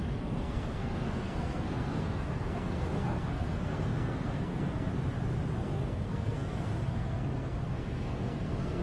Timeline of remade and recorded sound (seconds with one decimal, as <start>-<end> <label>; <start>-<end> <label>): 0.0-4.9 remade; 4.9-5.6 recorded; 5.6-8.8 remade